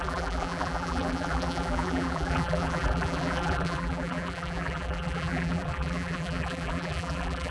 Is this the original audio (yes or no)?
no